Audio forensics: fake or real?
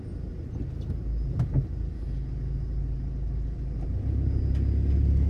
real